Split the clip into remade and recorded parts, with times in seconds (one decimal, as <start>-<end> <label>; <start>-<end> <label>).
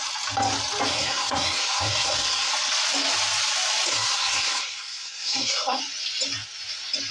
0.0-0.9 recorded; 0.9-2.5 remade; 2.5-3.9 recorded; 3.9-5.8 remade; 5.8-7.1 recorded